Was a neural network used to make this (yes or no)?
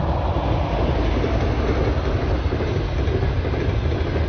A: no